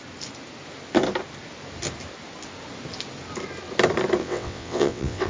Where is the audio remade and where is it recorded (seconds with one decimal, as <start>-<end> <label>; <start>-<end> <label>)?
0.0-4.2 recorded; 4.2-5.3 remade

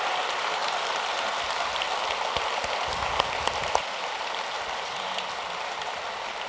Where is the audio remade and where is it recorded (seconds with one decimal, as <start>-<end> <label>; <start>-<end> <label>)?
0.0-6.5 recorded

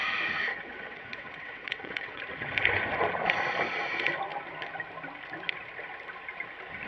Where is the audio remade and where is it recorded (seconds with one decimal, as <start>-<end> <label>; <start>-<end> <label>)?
0.0-0.5 recorded; 0.5-2.2 remade; 2.2-6.9 recorded